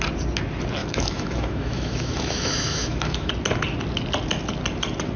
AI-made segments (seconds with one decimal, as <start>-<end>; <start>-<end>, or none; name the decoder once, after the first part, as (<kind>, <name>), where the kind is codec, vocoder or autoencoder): 0.8-3.3 (autoencoder, DAC-VAE)